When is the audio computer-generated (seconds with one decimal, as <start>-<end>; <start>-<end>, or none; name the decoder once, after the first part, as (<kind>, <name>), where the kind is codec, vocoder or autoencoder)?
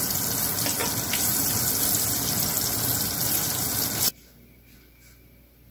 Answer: none